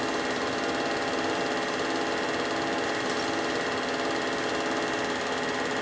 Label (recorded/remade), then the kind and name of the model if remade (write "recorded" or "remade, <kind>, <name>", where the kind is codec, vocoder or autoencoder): recorded